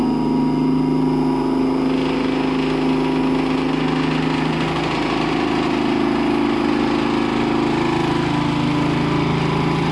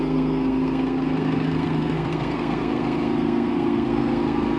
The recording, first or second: first